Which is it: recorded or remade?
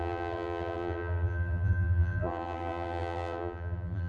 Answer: remade